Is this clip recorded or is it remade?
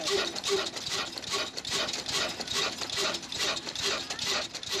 recorded